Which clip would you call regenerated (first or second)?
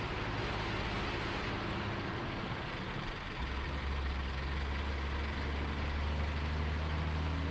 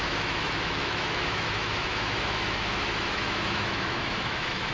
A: second